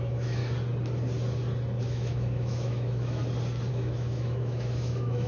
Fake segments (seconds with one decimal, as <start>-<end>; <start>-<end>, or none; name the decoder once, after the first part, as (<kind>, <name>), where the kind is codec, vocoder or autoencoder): 0.0-0.4 (autoencoder, DAC-VAE); 1.8-3.2; 3.7-5.3